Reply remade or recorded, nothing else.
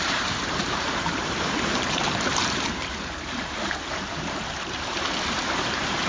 remade